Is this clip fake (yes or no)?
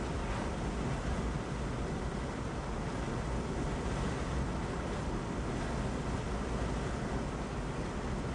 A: no